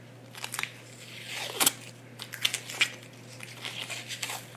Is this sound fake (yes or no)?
no